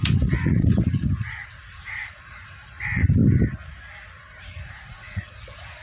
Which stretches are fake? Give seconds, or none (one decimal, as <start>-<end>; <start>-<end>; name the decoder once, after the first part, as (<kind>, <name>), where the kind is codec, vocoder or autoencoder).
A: 0.0-3.2 (vocoder, Vocos); 4.5-5.8